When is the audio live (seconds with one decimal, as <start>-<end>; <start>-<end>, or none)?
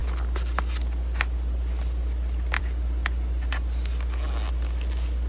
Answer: 0.0-5.3